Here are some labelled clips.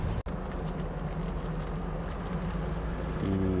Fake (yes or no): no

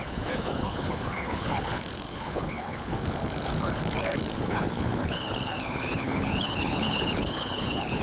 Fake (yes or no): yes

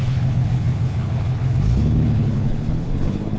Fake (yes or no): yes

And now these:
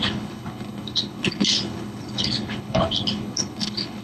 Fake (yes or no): yes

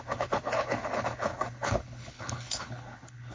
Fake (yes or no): yes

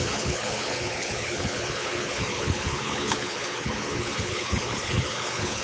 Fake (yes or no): yes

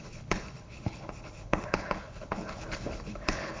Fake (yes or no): yes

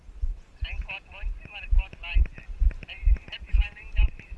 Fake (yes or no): no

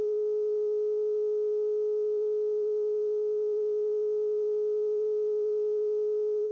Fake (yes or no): no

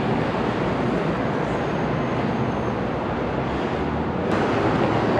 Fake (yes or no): no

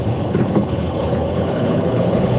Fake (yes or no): yes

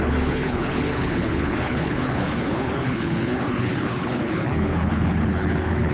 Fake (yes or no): yes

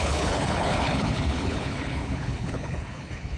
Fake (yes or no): yes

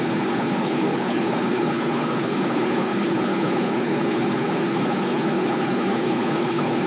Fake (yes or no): yes